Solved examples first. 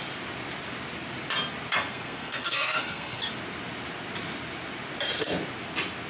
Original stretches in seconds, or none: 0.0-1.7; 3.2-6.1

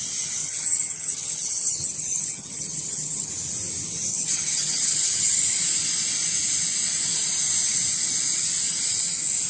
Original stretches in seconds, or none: 0.0-0.4; 3.3-4.1; 5.4-9.5